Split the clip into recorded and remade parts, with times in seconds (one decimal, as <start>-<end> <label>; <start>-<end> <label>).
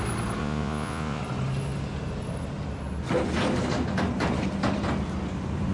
0.0-0.4 recorded; 0.4-1.2 remade; 1.2-5.7 recorded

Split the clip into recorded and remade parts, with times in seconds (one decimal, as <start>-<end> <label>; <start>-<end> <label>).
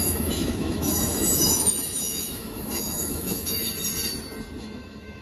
0.0-3.6 remade; 3.6-4.6 recorded; 4.6-5.2 remade